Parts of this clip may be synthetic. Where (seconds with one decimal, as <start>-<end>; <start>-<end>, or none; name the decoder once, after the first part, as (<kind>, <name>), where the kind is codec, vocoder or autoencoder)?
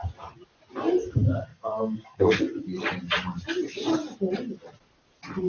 1.5-2.4 (codec, SNAC)